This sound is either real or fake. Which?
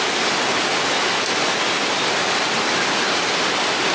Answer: real